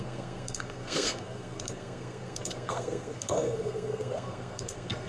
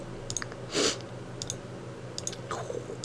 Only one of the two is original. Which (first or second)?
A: second